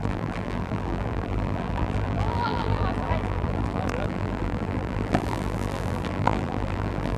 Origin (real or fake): fake